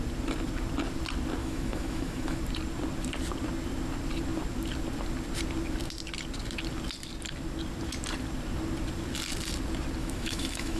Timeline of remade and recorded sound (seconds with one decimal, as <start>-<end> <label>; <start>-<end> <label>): 0.0-1.4 recorded; 1.4-2.4 remade; 2.4-10.0 recorded; 10.0-10.8 remade